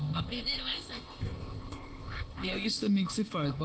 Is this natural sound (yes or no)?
no